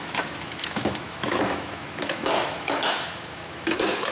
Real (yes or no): no